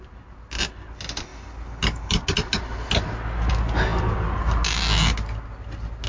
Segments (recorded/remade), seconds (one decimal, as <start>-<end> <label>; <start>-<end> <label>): 0.0-6.1 recorded